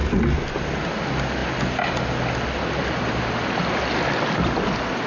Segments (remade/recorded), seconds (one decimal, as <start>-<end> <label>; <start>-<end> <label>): 0.0-5.1 recorded